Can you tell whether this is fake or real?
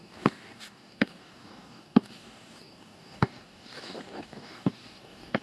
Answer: fake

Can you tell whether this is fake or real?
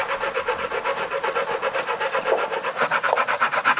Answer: real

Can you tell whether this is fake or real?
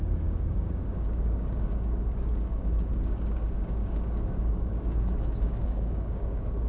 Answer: fake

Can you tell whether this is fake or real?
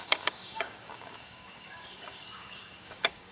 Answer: fake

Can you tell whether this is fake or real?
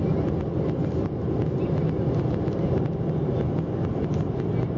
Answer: real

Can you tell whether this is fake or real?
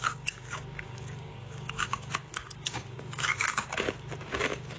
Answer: fake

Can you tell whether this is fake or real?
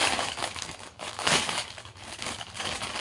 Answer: fake